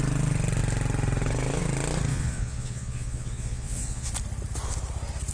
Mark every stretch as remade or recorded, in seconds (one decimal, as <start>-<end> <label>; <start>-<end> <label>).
0.0-2.1 recorded; 2.1-4.1 remade; 4.1-5.3 recorded